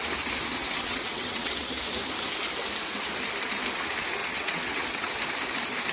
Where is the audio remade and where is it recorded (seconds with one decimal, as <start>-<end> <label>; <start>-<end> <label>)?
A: 0.0-0.6 recorded; 0.6-1.7 remade; 1.7-4.2 recorded; 4.2-5.2 remade; 5.2-5.9 recorded